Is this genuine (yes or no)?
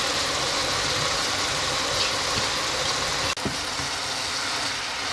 yes